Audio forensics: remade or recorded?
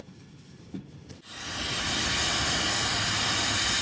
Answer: recorded